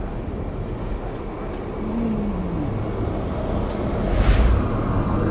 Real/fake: real